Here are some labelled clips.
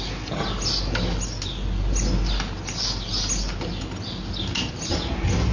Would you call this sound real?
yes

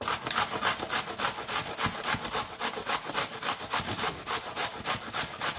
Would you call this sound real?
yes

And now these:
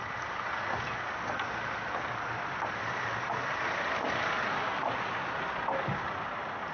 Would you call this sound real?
yes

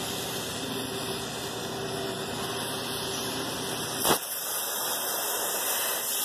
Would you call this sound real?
yes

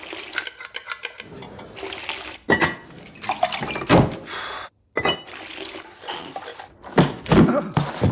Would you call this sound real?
yes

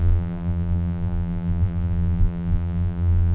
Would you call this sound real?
no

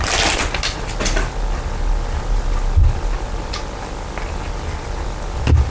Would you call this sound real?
yes